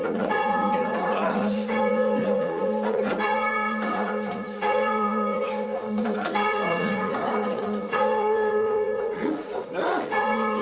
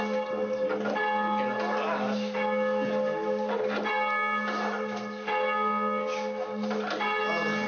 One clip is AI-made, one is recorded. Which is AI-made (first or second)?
first